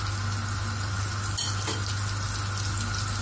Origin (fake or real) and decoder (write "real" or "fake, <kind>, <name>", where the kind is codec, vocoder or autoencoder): real